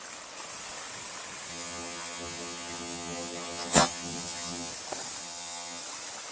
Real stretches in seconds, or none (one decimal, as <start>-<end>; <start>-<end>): 0.0-1.5; 4.7-5.2; 5.8-6.3